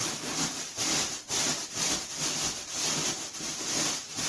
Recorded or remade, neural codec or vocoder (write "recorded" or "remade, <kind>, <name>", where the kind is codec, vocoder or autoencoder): recorded